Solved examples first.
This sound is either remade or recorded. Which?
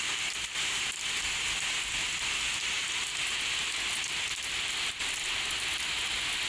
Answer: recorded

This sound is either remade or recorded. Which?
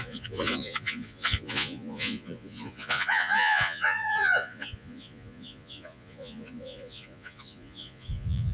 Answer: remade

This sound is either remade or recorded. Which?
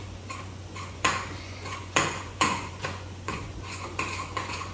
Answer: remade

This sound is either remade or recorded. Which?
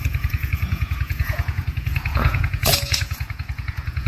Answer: remade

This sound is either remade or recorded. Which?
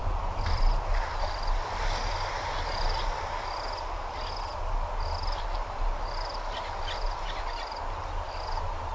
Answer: recorded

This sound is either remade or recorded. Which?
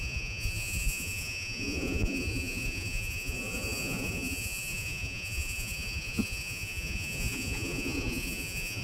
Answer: remade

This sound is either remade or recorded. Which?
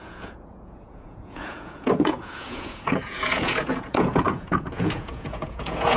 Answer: remade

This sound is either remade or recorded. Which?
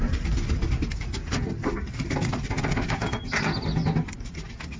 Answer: recorded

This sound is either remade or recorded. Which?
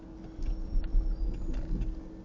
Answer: recorded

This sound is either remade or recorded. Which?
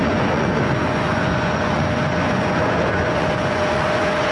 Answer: remade